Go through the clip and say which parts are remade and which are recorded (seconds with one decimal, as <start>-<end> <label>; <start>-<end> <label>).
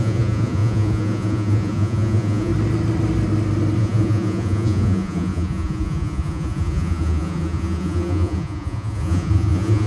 0.0-2.5 remade; 2.5-3.8 recorded; 3.8-9.9 remade